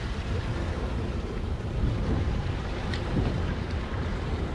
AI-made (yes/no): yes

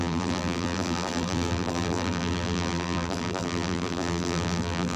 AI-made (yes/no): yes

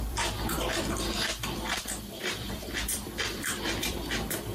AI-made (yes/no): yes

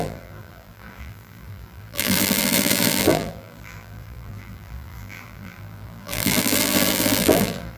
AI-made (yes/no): yes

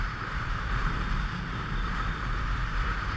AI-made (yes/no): yes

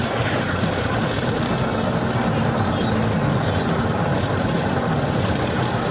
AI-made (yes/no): no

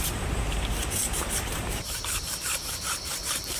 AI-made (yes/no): yes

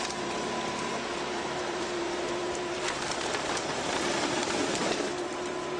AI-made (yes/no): yes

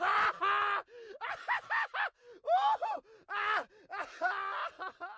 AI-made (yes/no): no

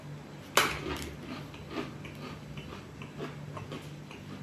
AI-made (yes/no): no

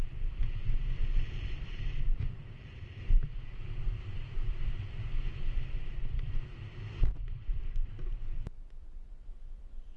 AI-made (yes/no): yes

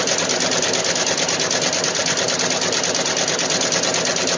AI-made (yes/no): no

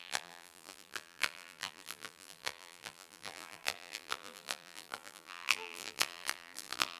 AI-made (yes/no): yes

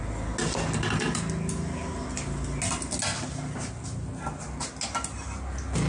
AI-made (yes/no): no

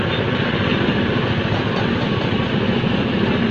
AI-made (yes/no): yes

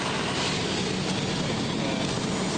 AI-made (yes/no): no